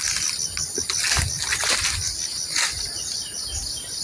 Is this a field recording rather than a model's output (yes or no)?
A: yes